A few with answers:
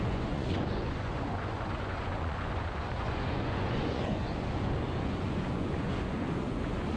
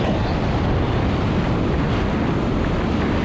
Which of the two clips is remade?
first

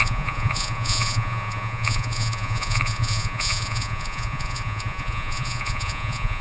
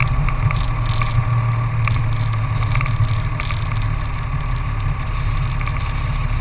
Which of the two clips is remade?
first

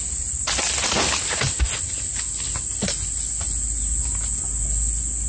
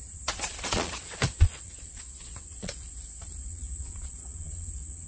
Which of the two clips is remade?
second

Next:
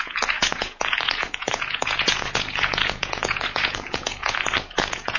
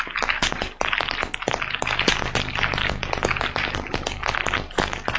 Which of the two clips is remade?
first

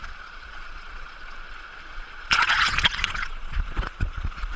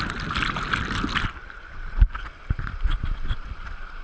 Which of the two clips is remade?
first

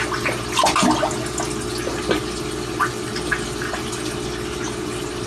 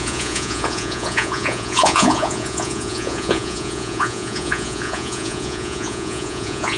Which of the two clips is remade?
second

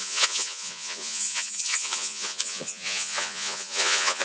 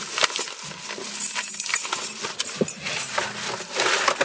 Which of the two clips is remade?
first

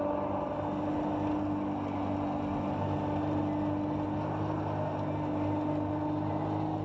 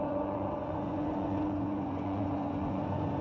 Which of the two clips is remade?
second